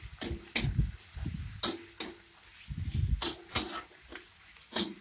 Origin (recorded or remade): recorded